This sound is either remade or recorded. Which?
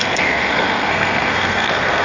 remade